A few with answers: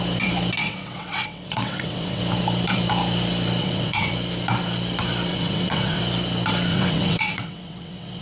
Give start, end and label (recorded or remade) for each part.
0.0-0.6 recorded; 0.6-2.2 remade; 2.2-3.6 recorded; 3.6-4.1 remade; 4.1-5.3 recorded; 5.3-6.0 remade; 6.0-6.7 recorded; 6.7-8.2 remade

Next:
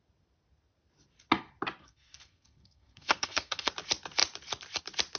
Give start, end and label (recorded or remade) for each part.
0.0-1.8 recorded; 1.8-3.7 remade; 3.7-5.2 recorded

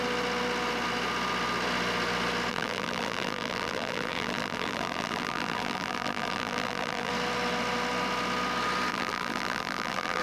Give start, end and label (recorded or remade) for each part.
0.0-2.5 recorded; 2.5-7.1 remade; 7.1-8.9 recorded; 8.9-10.2 remade